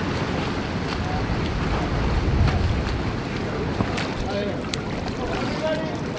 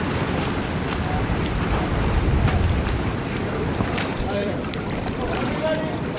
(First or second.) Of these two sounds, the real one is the first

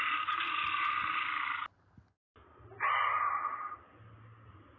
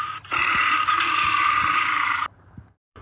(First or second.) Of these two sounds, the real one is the first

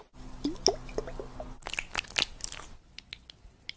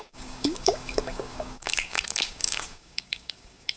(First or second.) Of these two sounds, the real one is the first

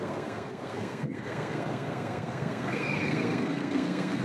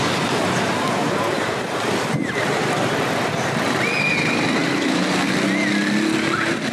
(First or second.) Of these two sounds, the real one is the second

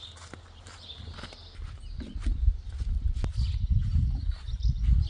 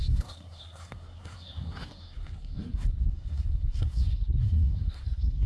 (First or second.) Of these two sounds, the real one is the first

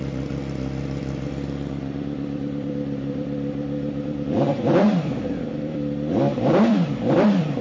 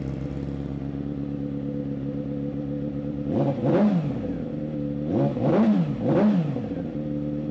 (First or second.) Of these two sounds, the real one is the second